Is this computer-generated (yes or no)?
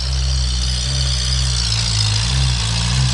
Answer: no